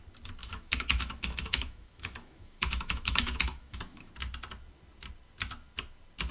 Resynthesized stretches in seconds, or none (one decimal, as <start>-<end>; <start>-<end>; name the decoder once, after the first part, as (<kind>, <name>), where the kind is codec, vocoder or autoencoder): 0.4-4.1 (autoencoder, DAC-VAE)